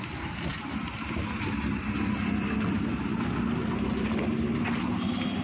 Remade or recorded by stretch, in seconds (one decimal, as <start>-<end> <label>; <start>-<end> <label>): 0.0-5.4 recorded